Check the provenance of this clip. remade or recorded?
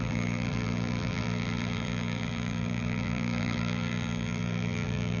remade